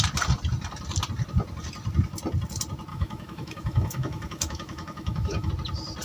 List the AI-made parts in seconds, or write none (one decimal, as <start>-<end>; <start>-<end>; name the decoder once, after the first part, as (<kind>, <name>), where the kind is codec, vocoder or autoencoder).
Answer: 2.9-5.5 (autoencoder, DAC-VAE)

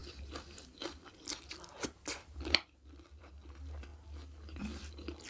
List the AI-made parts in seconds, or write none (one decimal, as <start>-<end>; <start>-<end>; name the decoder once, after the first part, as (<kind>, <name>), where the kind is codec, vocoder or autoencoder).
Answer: none

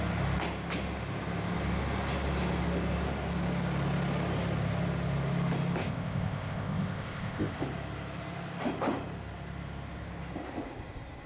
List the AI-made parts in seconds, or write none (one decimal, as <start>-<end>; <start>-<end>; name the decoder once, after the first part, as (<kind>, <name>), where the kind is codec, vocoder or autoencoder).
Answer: 5.8-7.6 (codec, ZipCodec)